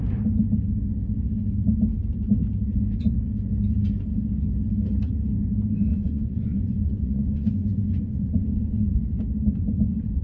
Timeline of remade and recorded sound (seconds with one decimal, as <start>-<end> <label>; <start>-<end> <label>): 0.0-5.9 recorded; 5.9-9.0 remade; 9.0-9.4 recorded; 9.4-10.2 remade